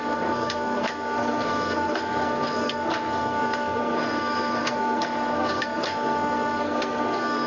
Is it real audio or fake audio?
fake